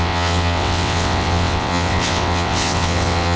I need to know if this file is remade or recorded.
remade